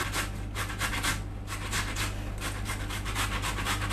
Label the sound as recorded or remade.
recorded